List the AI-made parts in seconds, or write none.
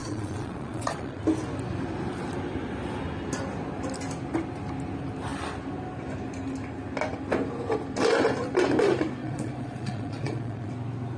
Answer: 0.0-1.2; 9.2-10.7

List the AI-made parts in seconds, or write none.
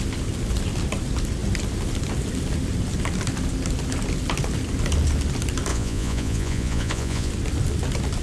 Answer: 5.7-7.3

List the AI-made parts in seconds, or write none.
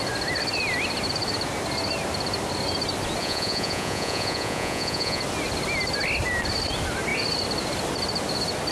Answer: 3.2-5.2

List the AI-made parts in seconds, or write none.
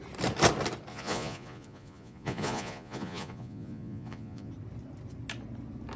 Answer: 0.9-4.5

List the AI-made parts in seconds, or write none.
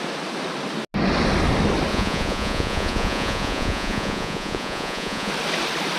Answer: 1.9-5.3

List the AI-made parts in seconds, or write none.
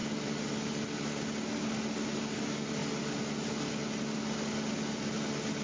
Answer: none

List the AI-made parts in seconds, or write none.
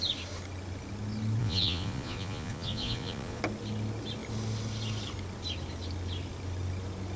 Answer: 1.4-3.4